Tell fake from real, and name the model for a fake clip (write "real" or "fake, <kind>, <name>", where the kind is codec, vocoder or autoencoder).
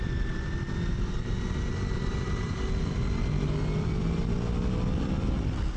real